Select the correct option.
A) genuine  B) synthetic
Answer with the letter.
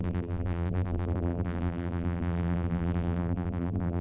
B